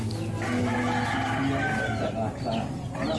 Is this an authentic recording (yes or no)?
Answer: yes